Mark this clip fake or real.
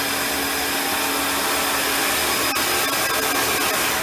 real